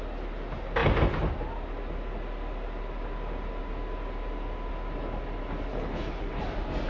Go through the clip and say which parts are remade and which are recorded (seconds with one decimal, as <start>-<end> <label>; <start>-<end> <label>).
0.0-5.7 recorded; 5.7-6.4 remade; 6.4-6.9 recorded